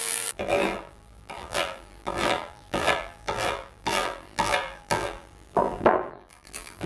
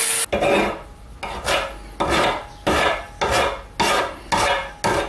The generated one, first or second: first